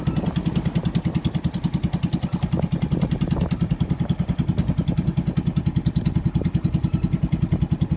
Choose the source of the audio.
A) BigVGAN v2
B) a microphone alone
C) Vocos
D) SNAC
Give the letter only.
B